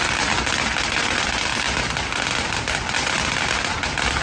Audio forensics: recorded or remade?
recorded